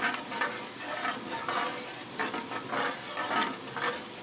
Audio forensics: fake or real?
real